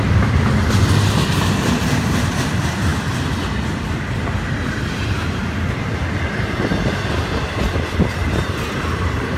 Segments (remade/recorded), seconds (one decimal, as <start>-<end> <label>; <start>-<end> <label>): 0.0-9.4 recorded